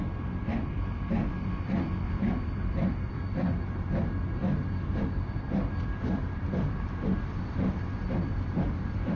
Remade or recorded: remade